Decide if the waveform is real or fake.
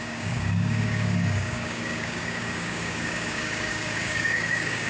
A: fake